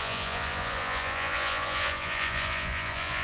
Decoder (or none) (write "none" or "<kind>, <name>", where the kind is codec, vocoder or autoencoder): vocoder, Vocos